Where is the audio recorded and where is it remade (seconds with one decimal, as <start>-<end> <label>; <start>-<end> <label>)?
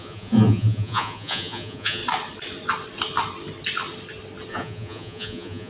0.0-2.0 remade; 2.0-4.5 recorded; 4.5-5.7 remade